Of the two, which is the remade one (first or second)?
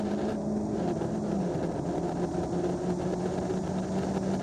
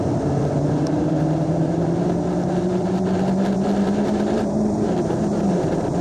second